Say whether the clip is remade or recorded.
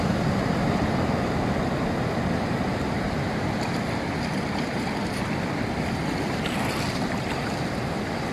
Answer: recorded